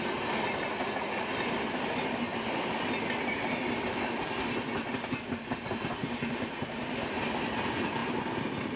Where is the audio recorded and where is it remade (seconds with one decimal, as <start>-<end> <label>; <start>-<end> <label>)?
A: 0.0-8.8 recorded